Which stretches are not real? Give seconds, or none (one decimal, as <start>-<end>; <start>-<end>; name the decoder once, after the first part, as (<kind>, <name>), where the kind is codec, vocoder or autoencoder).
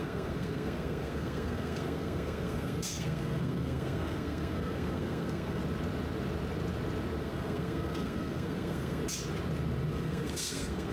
0.0-5.6 (codec, SNAC); 7.2-9.0; 9.9-10.9